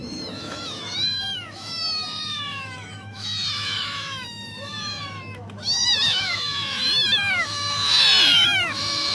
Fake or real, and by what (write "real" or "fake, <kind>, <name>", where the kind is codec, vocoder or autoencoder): fake, autoencoder, DAC-VAE